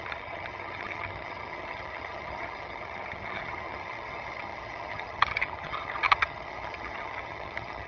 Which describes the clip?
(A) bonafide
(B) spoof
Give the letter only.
B